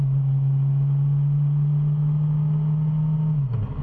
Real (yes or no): yes